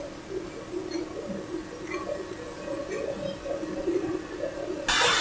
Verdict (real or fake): real